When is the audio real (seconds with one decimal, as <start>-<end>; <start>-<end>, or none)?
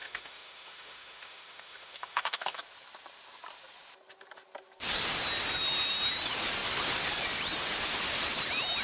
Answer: 2.6-8.8